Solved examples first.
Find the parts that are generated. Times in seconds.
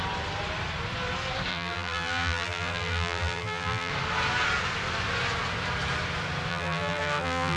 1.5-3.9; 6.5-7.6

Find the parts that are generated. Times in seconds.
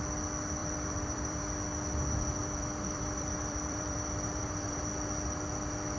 0.6-1.4; 2.4-4.8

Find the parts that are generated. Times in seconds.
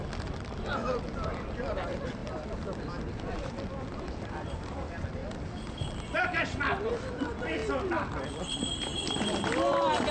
0.0-2.2; 3.7-5.2; 6.9-10.1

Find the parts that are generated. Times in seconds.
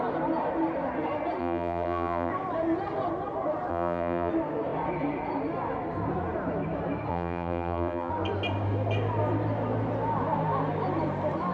1.4-2.3; 3.7-4.3; 7.1-8.1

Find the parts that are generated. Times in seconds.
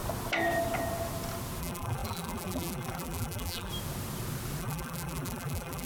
1.6-3.7; 4.6-5.9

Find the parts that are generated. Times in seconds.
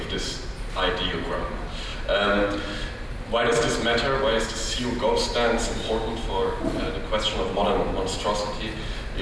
none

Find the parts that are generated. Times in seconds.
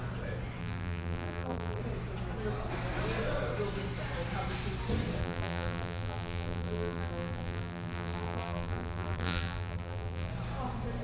0.6-1.8; 5.2-10.3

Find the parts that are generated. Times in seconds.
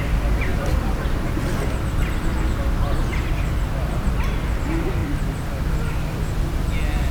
0.5-1.5; 3.1-3.7